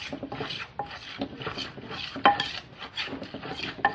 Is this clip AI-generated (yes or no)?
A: no